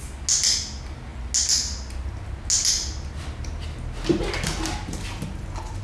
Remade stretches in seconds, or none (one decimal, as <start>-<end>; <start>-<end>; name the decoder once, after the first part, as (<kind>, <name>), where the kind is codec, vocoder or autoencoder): none